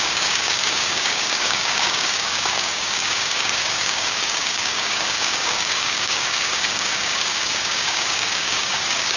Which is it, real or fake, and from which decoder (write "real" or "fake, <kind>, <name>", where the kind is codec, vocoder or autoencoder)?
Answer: fake, codec, DAC